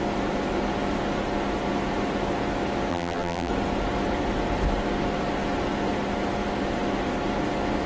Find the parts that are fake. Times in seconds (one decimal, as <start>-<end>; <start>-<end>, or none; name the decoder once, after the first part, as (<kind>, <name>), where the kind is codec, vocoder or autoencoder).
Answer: 2.9-3.5 (vocoder, BigVGAN v2)